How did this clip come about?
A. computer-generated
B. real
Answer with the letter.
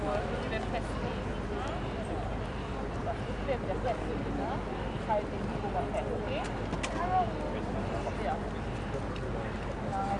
B